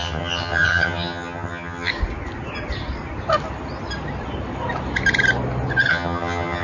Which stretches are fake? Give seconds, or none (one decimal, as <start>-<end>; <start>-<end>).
0.0-1.9; 5.9-6.6